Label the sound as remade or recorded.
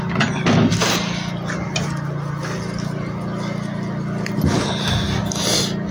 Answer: recorded